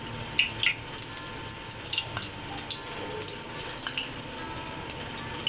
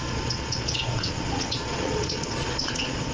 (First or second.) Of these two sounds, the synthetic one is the second